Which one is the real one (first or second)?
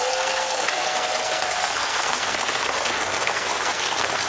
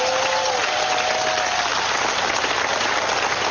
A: second